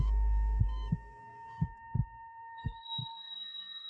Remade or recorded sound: remade